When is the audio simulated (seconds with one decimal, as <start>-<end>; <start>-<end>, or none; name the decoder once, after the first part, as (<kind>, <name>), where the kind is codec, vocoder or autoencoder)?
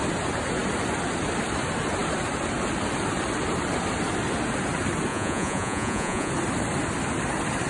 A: 5.1-6.3 (vocoder, Vocos)